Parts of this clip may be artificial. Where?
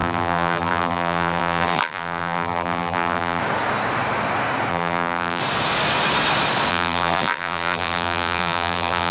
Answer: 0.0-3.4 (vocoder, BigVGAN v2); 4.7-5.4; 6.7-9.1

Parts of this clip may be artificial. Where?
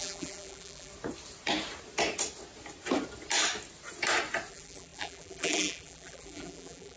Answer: 0.0-0.9 (vocoder, BigVGAN v2); 4.5-7.0